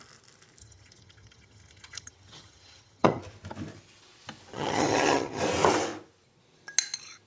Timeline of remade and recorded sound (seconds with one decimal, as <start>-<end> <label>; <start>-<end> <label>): 0.0-0.6 recorded; 0.6-3.2 remade; 3.2-4.5 recorded; 4.5-5.4 remade; 5.4-7.3 recorded